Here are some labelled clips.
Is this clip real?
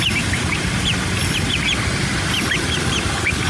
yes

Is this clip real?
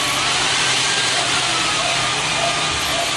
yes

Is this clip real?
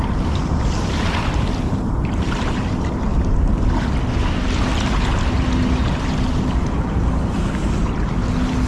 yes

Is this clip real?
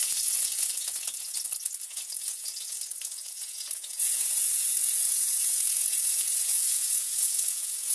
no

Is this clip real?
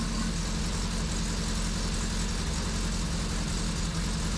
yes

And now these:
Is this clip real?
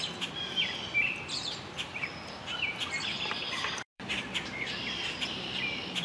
no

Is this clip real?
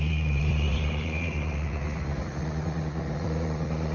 no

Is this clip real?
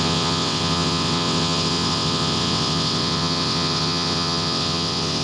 no